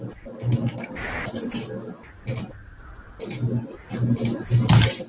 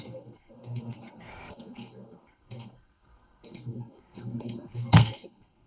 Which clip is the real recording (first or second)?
first